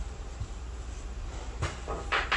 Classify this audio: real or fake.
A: real